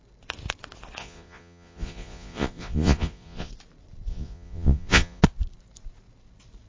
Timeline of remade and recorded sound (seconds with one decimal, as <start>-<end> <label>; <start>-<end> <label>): 0.0-1.0 recorded; 1.0-3.5 remade; 3.5-4.1 recorded; 4.1-5.2 remade; 5.2-6.7 recorded